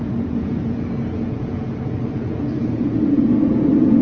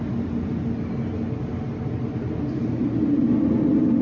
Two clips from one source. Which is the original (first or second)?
second